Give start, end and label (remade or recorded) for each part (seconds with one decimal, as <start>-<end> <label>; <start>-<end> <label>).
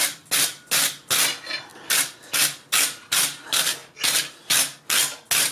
0.0-5.5 recorded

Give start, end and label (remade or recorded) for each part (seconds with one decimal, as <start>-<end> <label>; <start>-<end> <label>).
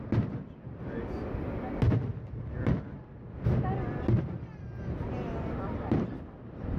0.0-6.8 recorded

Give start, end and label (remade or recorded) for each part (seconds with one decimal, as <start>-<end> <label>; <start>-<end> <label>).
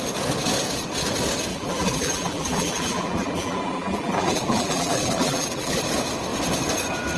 0.0-1.5 recorded; 1.5-5.8 remade; 5.8-7.2 recorded